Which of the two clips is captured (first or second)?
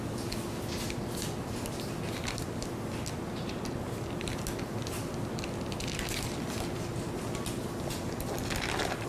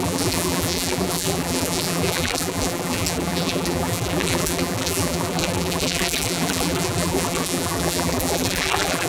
first